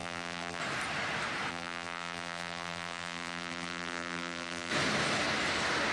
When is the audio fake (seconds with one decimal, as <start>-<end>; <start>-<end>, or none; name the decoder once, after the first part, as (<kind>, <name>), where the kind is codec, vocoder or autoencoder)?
0.0-0.6 (vocoder, BigVGAN v2); 1.5-4.7